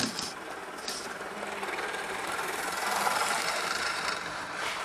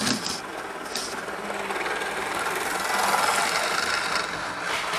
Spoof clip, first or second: first